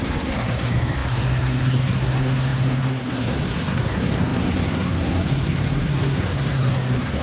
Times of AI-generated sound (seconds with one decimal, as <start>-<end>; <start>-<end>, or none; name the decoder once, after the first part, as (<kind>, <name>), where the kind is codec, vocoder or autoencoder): 0.0-7.2 (codec, SNAC)

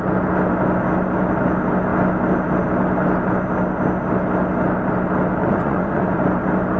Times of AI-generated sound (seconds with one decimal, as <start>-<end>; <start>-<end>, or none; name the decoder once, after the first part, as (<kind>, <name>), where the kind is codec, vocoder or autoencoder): 5.4-6.2 (vocoder, Vocos)

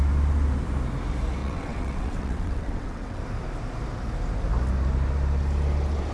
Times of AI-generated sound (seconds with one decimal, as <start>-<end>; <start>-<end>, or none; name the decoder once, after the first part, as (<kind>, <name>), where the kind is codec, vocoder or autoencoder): 1.4-3.2 (vocoder, WaveNeXt)

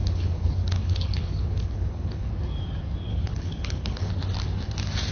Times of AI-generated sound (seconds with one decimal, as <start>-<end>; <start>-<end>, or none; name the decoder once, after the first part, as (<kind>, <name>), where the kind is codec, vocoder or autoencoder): 0.0-2.3 (codec, HILCodec); 3.1-4.1